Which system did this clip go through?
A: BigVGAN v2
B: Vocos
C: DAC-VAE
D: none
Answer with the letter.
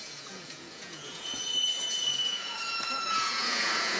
B